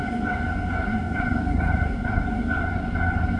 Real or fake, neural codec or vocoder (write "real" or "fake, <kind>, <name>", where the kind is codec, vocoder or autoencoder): fake, codec, SNAC